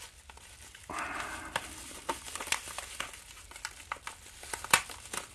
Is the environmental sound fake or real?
real